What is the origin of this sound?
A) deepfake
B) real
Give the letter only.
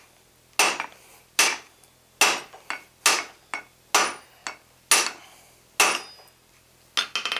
B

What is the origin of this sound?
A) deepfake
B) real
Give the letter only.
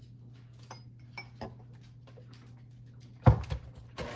B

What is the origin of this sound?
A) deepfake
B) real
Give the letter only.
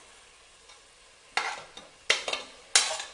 B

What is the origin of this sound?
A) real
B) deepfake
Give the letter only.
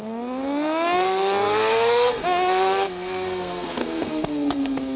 B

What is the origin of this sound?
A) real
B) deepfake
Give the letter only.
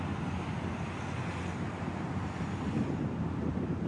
A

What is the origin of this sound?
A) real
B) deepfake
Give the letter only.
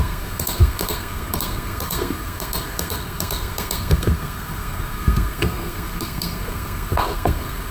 B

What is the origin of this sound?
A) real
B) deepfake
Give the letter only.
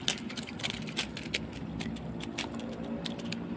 A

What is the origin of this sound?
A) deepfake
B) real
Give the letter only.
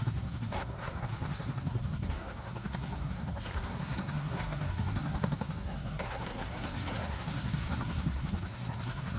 A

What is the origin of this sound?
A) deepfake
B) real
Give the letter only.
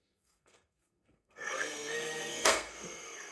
A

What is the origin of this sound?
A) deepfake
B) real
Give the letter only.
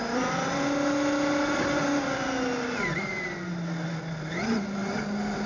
B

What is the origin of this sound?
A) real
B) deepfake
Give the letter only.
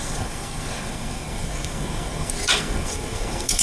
B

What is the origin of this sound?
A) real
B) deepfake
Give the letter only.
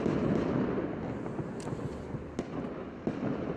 A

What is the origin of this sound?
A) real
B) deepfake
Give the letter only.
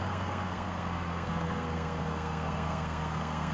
B